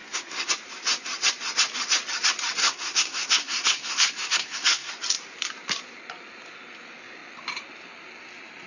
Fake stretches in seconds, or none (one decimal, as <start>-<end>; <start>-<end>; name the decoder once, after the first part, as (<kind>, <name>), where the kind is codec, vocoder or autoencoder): 0.0-0.5 (codec, SNAC); 2.6-4.9